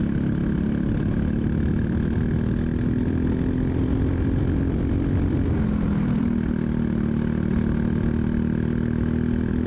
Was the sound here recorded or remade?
recorded